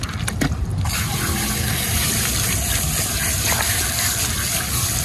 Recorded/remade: recorded